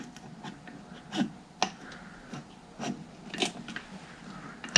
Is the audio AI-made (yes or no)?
no